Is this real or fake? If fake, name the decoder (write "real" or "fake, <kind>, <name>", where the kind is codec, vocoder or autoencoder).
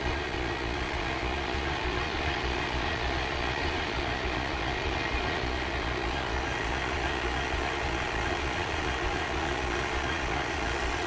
fake, vocoder, Vocos